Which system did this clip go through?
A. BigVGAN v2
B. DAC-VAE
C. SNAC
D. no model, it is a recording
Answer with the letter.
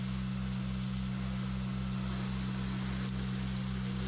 D